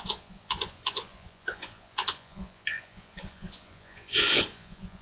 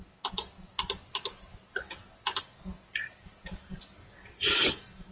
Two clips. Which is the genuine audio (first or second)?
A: second